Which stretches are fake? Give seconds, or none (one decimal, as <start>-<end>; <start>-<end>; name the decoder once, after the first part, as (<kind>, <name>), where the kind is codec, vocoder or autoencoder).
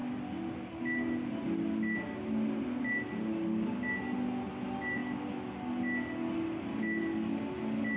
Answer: none